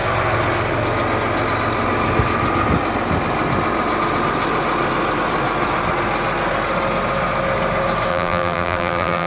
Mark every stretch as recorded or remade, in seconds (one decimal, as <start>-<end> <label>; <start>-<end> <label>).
0.0-8.1 recorded; 8.1-9.3 remade